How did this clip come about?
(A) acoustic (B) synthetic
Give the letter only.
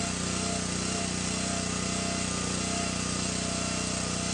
A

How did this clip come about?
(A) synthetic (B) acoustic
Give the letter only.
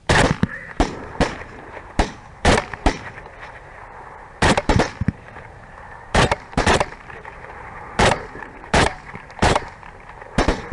A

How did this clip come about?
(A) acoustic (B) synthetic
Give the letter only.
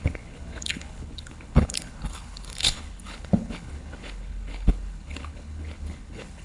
B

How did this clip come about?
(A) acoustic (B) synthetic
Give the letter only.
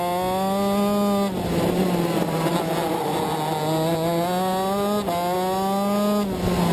A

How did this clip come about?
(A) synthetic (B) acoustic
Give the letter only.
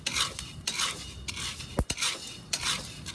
B